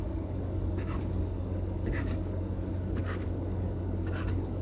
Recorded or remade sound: remade